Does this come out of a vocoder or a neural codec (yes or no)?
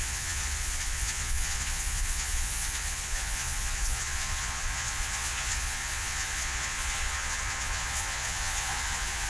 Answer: yes